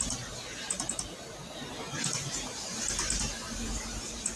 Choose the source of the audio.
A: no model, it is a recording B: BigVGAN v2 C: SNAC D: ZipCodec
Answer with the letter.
B